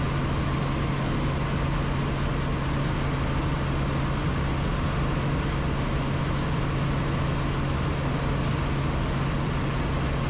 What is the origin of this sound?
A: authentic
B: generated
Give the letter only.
A